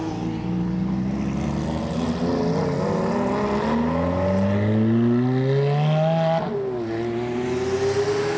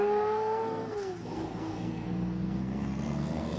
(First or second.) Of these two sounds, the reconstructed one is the second